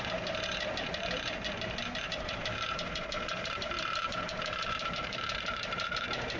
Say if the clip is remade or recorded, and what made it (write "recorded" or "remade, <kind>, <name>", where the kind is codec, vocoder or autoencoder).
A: remade, vocoder, BigVGAN v2